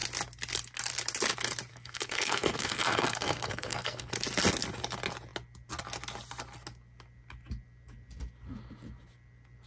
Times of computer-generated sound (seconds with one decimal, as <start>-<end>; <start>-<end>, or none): 1.7-4.1